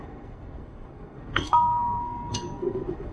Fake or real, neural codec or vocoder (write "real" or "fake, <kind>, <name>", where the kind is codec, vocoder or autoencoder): fake, codec, SNAC